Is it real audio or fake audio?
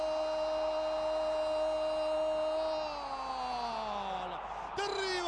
real